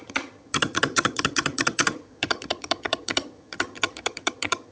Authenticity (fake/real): fake